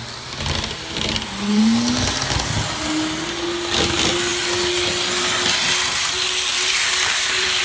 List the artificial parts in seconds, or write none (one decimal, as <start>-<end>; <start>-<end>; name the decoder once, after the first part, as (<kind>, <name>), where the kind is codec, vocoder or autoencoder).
6.5-7.6 (vocoder, BigVGAN v2)